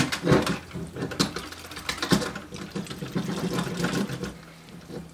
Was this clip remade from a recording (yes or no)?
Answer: no